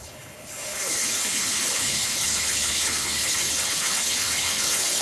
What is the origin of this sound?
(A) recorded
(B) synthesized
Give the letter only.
B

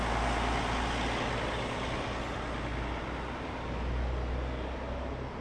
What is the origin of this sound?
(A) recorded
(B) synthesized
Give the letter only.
A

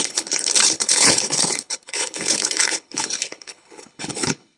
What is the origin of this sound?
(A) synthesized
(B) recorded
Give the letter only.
A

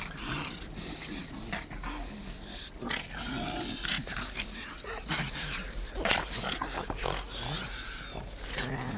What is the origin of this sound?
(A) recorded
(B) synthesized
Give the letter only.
A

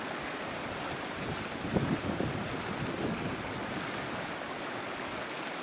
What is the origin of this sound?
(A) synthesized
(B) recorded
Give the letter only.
B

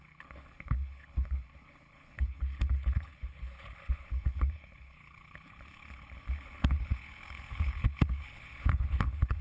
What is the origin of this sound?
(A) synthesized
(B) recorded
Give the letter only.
A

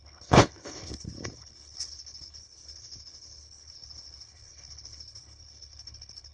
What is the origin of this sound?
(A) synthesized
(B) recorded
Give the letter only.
A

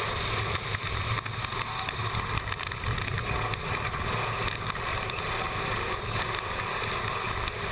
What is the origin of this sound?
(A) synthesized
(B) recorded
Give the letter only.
B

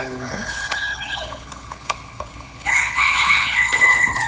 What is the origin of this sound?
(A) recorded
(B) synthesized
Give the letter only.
B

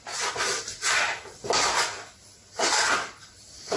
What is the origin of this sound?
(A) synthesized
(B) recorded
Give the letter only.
B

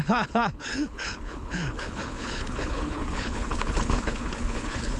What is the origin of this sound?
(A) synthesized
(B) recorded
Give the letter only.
A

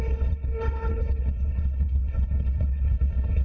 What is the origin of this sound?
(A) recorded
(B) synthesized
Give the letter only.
B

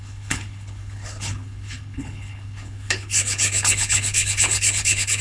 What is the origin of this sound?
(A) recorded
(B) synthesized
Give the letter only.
B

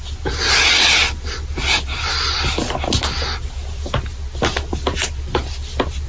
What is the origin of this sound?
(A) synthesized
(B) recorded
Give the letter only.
B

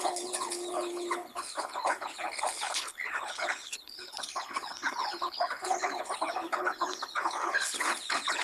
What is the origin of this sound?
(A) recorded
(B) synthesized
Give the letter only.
B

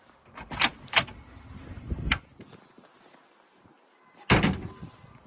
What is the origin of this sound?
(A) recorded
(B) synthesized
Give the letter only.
A